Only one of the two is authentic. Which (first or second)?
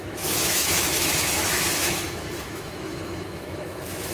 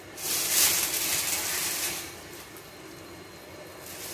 second